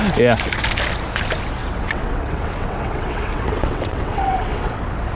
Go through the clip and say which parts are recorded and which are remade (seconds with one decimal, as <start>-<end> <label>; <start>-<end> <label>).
0.0-1.6 recorded; 1.6-4.7 remade; 4.7-5.2 recorded